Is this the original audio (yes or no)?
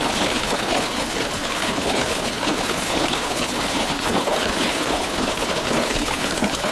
no